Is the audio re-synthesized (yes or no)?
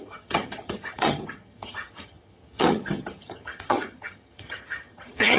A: yes